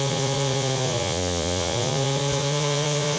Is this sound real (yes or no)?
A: no